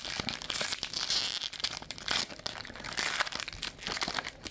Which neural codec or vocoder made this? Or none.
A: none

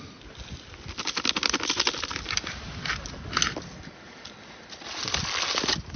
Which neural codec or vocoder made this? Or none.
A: none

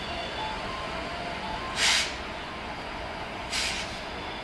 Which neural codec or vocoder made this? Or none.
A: vocoder, Vocos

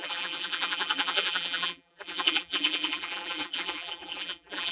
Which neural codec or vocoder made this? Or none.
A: vocoder, BigVGAN v2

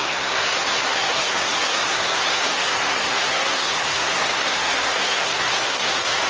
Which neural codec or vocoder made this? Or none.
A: codec, SNAC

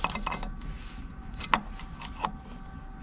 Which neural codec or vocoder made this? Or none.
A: none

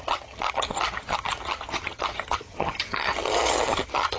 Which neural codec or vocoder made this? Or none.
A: vocoder, HiFi-GAN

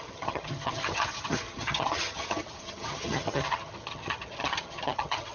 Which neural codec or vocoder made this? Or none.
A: vocoder, HiFi-GAN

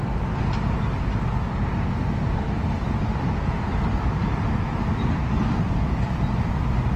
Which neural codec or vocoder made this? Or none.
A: none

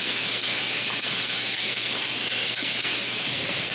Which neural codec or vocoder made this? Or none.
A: codec, SNAC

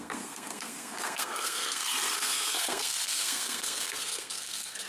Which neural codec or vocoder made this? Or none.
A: codec, SNAC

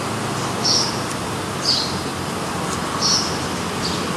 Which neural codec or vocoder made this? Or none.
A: none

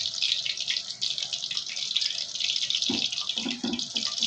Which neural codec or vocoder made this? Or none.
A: none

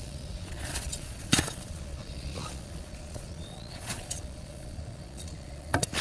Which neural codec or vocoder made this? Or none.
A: vocoder, Vocos